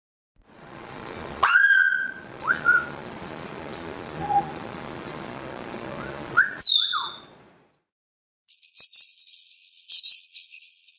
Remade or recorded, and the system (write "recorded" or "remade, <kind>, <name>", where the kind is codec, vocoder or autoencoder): remade, vocoder, Vocos